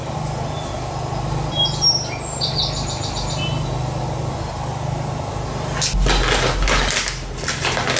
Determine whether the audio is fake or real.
real